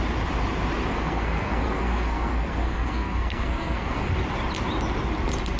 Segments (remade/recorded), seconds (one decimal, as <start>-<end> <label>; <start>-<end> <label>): 0.0-0.9 recorded; 0.9-4.1 remade; 4.1-5.6 recorded